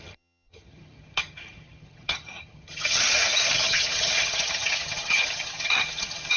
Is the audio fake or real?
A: fake